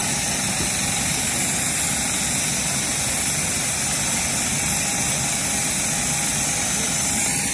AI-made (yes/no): no